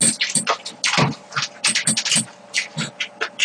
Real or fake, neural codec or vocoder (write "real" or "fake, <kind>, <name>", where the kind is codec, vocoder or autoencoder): real